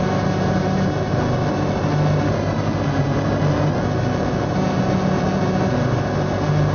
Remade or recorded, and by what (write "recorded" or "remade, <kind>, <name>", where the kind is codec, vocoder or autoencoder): recorded